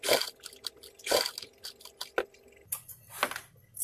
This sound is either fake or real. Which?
real